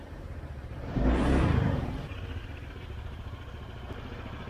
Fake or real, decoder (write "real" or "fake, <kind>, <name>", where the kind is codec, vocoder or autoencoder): fake, vocoder, BigVGAN v2